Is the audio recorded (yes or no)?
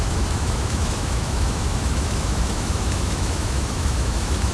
no